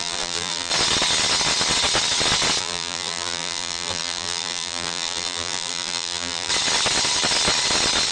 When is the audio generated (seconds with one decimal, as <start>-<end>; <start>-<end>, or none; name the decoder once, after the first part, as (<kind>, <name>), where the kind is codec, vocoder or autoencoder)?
0.0-0.7 (vocoder, BigVGAN v2); 2.6-6.5